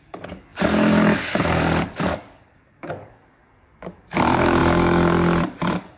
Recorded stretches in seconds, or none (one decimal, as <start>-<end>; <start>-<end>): none